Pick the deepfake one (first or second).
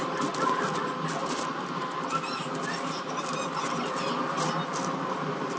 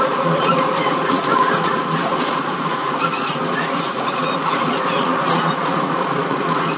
second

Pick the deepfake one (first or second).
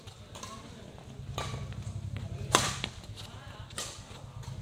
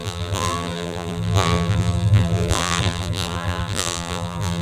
second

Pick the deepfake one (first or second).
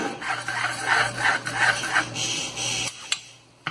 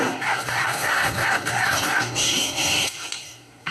second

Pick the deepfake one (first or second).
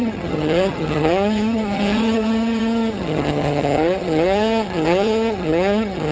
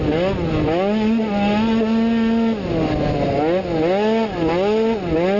first